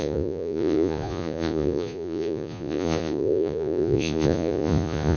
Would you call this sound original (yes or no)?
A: no